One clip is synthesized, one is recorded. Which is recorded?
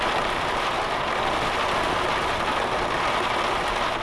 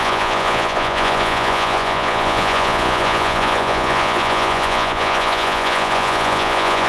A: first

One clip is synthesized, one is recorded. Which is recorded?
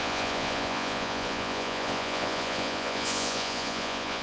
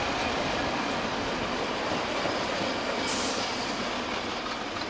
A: second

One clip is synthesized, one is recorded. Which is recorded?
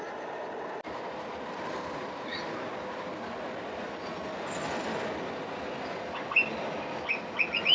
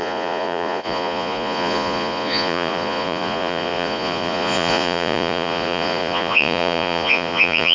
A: first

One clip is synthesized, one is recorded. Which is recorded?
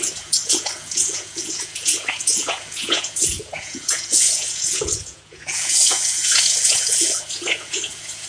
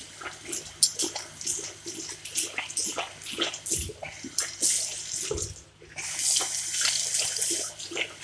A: second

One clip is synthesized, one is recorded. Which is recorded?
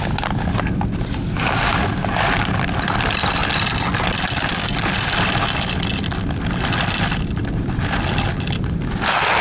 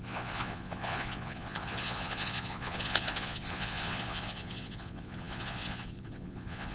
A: first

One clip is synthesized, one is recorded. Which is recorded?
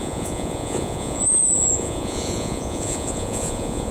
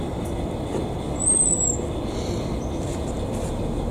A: second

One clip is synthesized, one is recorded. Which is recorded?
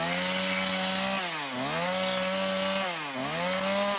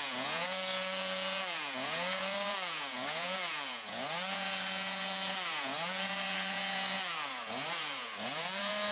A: first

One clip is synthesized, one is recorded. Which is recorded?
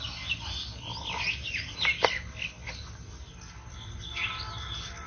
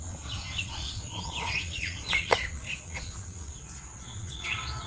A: first